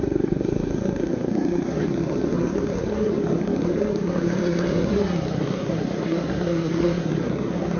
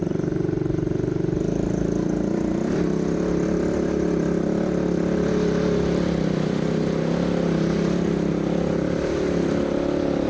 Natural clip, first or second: second